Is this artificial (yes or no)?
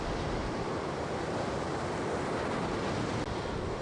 no